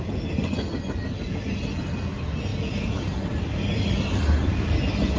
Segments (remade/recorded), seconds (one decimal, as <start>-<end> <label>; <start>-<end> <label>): 0.0-5.2 recorded

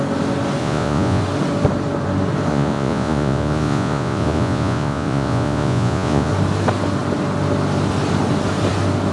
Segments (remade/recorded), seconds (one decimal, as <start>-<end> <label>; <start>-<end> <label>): 0.0-0.6 recorded; 0.6-1.2 remade; 1.2-2.5 recorded; 2.5-6.3 remade; 6.3-9.1 recorded

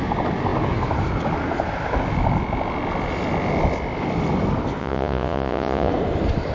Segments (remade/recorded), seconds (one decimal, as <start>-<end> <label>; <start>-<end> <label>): 0.0-4.8 recorded; 4.8-5.9 remade; 5.9-6.5 recorded

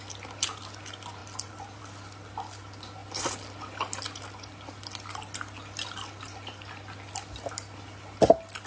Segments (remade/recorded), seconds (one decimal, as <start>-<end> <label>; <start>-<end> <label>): 0.0-8.7 recorded

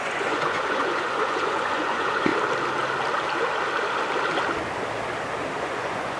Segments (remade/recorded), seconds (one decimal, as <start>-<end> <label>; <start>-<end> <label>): 0.0-2.3 remade; 2.3-5.6 recorded; 5.6-6.2 remade

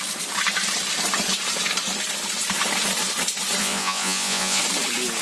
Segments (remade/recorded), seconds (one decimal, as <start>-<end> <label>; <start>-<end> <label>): 0.0-3.6 recorded; 3.6-4.6 remade; 4.6-5.2 recorded